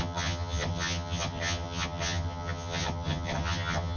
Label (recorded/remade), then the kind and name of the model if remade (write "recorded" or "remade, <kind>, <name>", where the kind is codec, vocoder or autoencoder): remade, vocoder, HiFi-GAN